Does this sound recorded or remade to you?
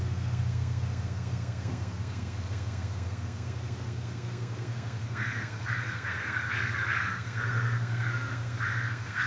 remade